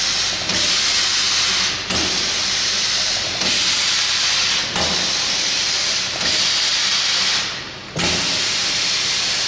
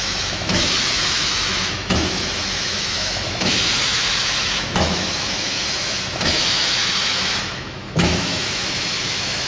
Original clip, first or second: first